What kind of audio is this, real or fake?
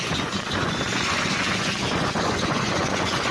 fake